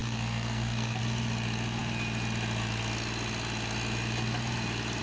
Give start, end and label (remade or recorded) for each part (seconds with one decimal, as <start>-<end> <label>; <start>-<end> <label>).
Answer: 0.0-1.0 remade; 1.0-5.0 recorded